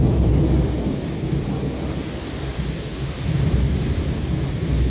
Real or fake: real